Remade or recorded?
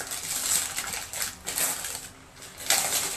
recorded